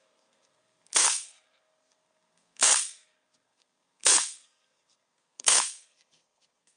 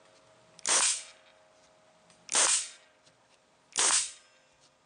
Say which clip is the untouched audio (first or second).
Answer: second